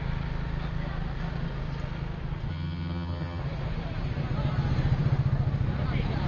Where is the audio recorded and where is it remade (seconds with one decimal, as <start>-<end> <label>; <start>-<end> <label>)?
0.0-2.5 recorded; 2.5-3.4 remade; 3.4-6.3 recorded